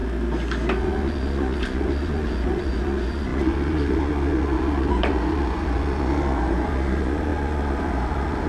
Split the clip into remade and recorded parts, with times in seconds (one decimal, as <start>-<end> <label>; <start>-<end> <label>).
0.0-0.8 recorded; 0.8-8.5 remade